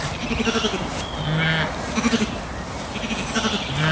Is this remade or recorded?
recorded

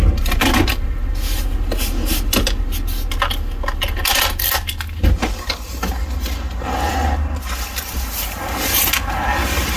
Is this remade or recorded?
recorded